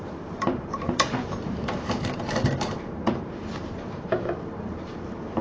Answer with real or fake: fake